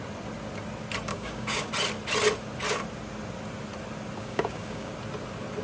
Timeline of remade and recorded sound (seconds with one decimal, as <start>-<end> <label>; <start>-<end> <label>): 0.0-1.1 recorded; 1.1-1.7 remade; 1.7-4.2 recorded; 4.2-4.9 remade; 4.9-5.6 recorded